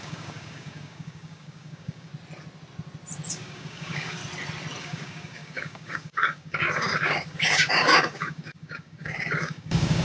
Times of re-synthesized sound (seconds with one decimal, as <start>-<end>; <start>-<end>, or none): 0.0-2.1; 3.3-4.2; 4.8-10.0